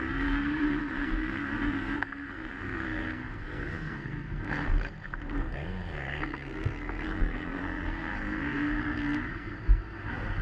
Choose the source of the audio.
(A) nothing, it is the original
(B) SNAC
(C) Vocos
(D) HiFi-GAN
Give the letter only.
B